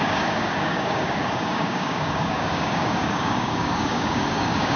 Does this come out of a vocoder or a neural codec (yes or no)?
yes